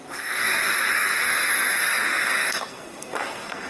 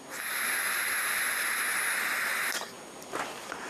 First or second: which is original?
second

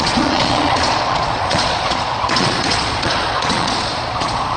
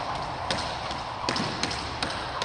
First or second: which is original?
second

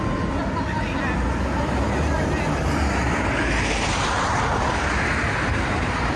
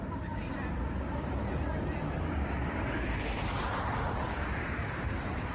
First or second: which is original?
first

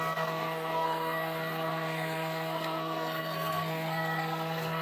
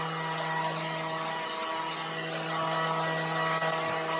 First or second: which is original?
second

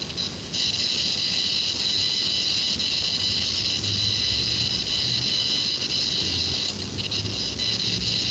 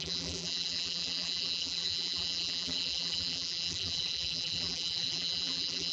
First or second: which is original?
first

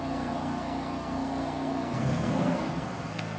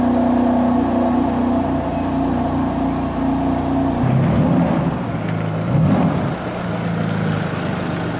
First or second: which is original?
second